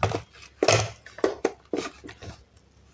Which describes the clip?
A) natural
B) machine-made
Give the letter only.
A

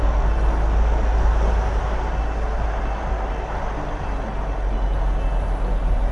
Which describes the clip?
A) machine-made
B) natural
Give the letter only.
B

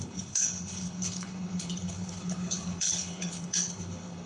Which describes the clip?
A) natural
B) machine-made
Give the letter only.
B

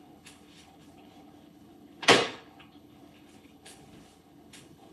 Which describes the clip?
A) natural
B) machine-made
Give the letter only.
B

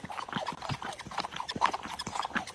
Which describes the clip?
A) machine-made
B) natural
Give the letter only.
B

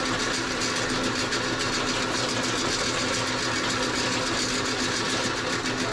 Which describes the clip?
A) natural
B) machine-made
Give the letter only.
A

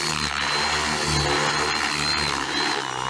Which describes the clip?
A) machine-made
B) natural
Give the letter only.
B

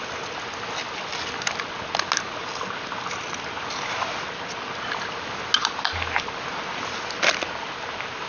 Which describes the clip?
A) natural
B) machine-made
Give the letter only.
A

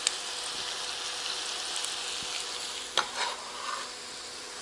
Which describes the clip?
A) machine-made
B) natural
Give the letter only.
B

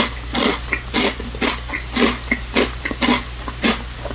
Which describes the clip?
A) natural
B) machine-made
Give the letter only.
A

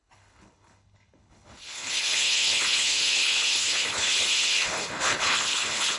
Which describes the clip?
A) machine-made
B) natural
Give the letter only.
A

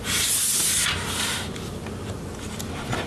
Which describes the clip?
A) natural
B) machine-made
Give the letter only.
A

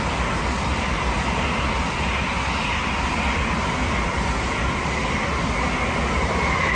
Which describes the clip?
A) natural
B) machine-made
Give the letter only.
A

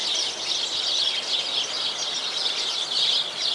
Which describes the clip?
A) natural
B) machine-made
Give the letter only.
A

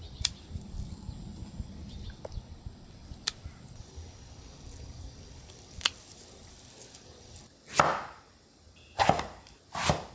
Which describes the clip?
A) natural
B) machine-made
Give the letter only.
A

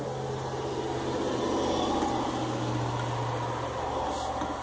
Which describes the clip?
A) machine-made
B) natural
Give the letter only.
B